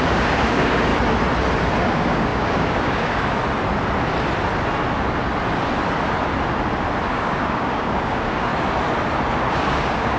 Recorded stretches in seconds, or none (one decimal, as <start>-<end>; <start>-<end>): 0.9-1.8; 3.4-7.0; 8.5-9.5